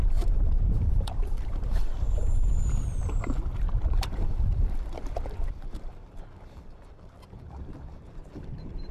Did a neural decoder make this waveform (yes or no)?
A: yes